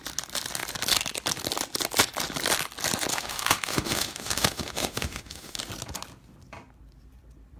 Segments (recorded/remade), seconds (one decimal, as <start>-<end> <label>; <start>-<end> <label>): 0.0-3.1 recorded; 3.1-5.6 remade; 5.6-7.6 recorded